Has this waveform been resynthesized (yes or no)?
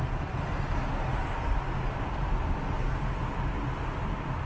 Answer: no